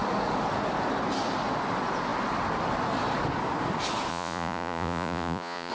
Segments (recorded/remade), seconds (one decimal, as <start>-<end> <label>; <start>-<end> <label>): 0.0-4.1 recorded; 4.1-5.7 remade